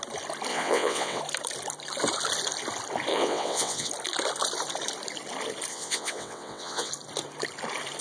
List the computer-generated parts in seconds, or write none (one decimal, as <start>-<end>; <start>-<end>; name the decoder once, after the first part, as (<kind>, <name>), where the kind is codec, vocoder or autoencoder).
0.5-1.2 (vocoder, WaveNeXt); 3.1-3.9; 5.7-6.9

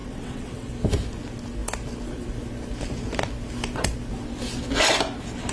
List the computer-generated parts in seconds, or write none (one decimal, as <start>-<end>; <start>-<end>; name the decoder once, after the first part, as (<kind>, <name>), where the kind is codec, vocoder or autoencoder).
0.0-0.7 (vocoder, WaveNeXt)

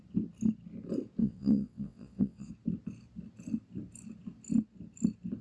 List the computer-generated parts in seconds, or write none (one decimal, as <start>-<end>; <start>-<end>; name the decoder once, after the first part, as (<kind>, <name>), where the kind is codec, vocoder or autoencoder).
1.2-2.5 (vocoder, WaveNeXt)

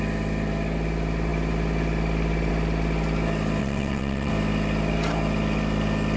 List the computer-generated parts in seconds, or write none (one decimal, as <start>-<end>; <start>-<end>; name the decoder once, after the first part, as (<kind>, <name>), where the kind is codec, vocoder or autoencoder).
3.6-4.3 (vocoder, WaveNeXt)

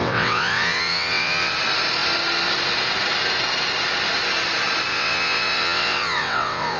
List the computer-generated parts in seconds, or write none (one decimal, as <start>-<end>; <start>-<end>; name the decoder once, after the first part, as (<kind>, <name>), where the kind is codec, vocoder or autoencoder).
0.0-1.5 (vocoder, WaveNeXt); 4.9-6.8

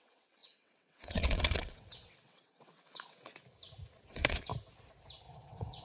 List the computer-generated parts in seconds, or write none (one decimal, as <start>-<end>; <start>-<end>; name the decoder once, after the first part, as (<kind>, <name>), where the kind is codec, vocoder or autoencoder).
0.0-3.3 (vocoder, WaveNeXt); 4.1-4.5; 5.3-5.8